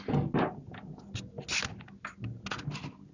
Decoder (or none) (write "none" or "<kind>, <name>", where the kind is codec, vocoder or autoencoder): none